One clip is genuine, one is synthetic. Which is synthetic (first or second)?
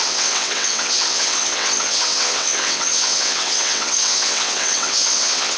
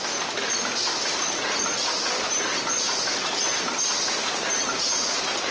first